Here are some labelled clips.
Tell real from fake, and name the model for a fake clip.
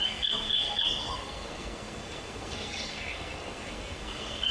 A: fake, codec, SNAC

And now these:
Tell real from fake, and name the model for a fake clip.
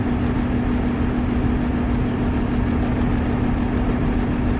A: real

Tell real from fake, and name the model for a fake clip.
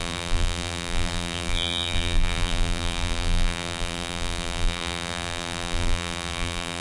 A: fake, vocoder, BigVGAN v2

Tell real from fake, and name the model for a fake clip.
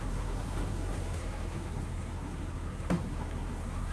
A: fake, codec, SNAC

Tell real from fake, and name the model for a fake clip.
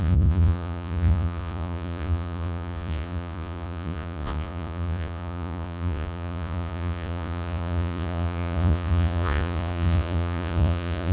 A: fake, vocoder, Vocos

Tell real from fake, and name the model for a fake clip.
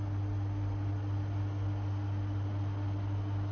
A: real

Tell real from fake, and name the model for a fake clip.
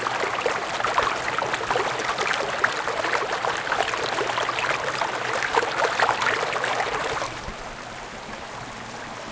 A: real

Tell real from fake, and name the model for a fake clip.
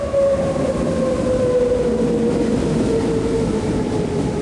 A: real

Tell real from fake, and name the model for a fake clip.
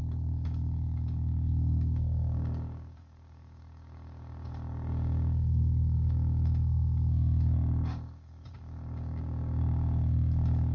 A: fake, codec, DAC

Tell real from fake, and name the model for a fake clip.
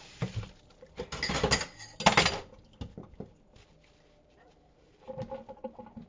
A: real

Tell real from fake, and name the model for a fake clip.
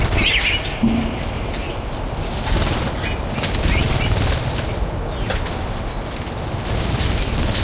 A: real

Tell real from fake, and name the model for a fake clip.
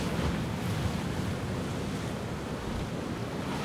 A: real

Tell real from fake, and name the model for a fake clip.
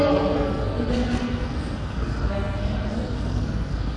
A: fake, codec, SNAC